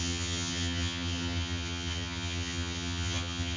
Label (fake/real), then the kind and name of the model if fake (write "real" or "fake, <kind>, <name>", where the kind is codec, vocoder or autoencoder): fake, vocoder, HiFi-GAN